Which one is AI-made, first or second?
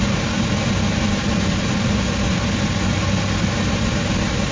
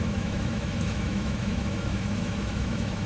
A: second